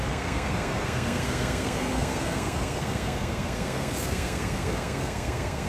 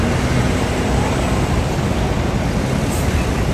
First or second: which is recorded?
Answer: second